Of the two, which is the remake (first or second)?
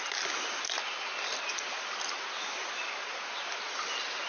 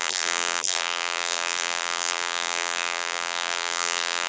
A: second